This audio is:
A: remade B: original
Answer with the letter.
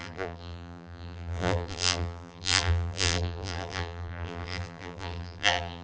A